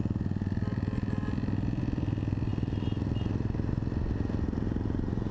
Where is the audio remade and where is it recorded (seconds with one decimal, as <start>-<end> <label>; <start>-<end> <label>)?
0.0-5.3 recorded